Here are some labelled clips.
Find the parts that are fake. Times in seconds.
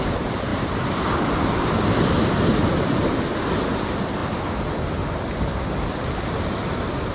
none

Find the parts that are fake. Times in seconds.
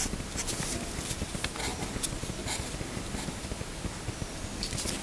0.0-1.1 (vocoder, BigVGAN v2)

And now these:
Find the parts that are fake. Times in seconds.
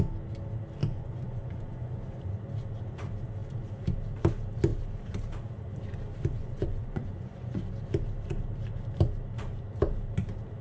0.8-2.3 (vocoder, Vocos); 6.4-7.6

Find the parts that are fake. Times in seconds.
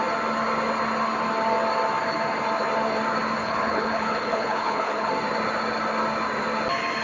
3.4-5.1 (codec, HILCodec)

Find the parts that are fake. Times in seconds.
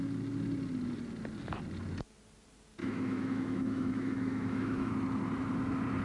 2.8-4.9 (autoencoder, DAC-VAE)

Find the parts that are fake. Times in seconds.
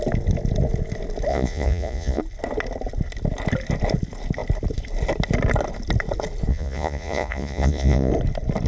1.3-2.2 (vocoder, Vocos); 6.5-8.1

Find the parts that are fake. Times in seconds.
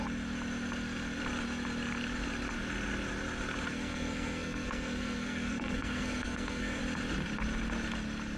3.7-6.8 (codec, SNAC)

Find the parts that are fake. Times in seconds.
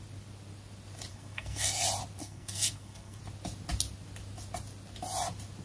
1.1-1.8 (codec, SNAC); 2.2-3.2